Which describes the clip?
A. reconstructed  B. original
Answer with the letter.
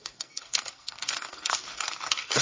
A